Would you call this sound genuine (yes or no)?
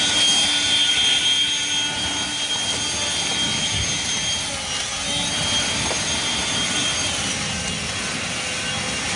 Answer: yes